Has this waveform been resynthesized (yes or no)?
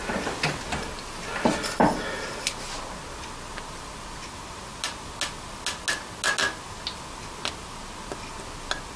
no